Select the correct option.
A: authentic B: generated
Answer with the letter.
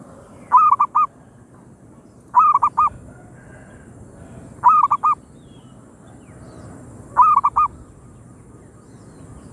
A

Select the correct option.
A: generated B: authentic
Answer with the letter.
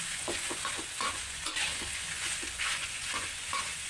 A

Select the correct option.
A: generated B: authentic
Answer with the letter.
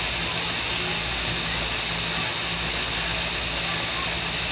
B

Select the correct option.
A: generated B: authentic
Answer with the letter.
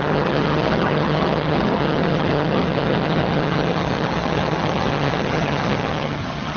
A